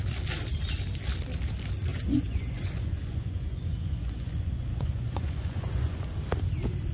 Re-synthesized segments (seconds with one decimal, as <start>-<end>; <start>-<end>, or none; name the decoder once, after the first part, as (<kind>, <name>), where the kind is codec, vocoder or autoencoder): 1.9-6.0 (vocoder, Vocos)